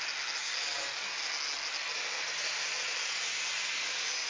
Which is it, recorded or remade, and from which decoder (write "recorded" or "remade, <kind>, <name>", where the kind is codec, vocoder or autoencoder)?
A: recorded